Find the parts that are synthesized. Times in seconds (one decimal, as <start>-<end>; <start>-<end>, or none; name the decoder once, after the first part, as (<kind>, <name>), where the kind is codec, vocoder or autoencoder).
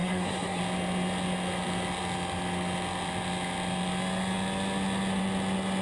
0.0-0.6 (codec, SNAC)